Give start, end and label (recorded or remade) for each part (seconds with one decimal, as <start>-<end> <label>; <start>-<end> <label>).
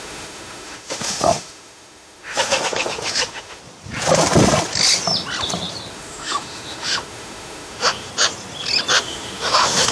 0.0-3.6 remade; 3.6-5.9 recorded; 5.9-8.1 remade; 8.1-9.0 recorded; 9.0-9.9 remade